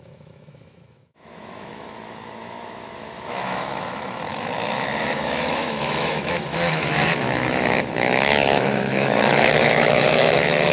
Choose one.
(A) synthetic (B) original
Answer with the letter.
A